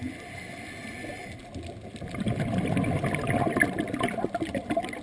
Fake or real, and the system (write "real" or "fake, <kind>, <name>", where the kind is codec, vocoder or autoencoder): real